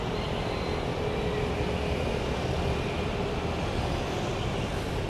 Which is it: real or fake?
real